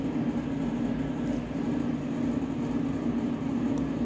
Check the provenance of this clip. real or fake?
real